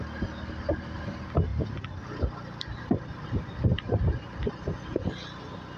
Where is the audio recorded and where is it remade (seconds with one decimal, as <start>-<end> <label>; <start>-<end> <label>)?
0.0-5.8 recorded